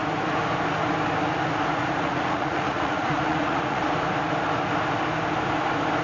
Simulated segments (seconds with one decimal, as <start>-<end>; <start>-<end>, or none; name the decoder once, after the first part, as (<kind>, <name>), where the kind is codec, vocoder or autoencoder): 1.7-3.8 (vocoder, Vocos)